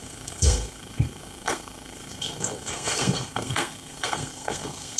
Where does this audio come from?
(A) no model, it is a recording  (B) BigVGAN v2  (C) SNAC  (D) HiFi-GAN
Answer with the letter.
C